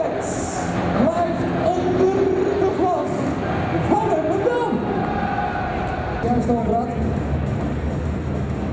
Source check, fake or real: real